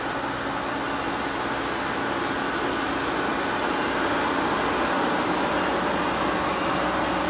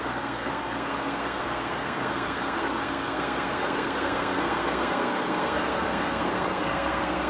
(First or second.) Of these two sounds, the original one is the first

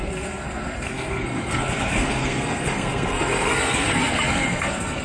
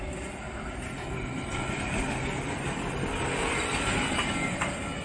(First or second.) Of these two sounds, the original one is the second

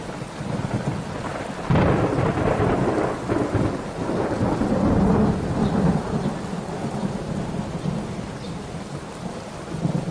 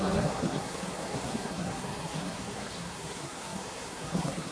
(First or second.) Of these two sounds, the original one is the first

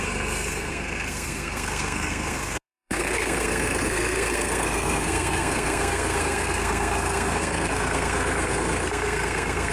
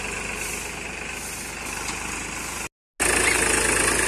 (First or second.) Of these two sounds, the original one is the second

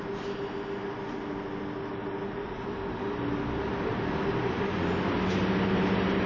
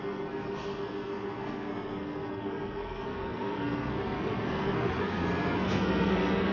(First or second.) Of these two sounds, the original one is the first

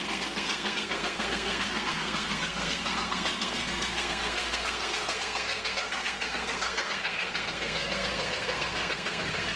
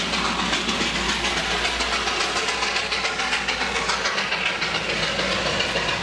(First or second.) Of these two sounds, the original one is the second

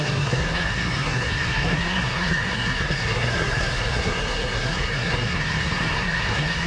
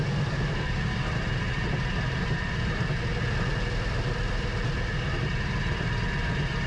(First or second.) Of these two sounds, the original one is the second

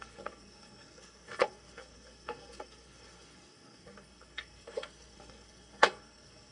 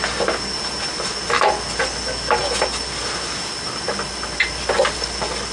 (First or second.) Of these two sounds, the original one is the second